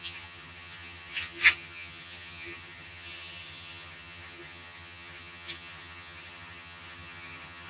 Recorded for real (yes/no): no